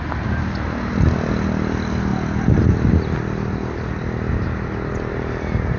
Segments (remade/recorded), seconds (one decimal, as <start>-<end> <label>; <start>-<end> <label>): 0.0-5.8 recorded